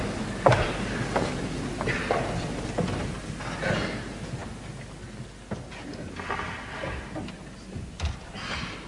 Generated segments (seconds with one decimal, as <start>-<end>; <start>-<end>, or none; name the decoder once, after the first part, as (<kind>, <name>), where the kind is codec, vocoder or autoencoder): none